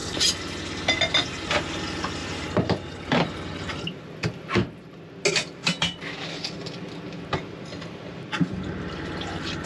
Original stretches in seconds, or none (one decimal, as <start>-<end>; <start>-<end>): 0.0-2.2; 3.7-9.7